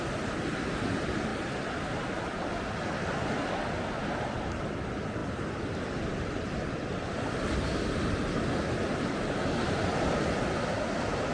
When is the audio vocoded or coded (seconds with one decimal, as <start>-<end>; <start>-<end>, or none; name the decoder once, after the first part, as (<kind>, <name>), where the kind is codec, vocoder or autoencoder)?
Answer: none